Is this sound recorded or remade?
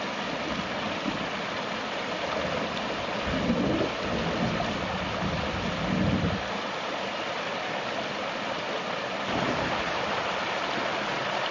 recorded